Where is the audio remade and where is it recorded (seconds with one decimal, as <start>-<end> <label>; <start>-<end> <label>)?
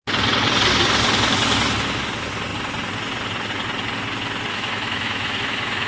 0.0-4.5 recorded; 4.5-5.9 remade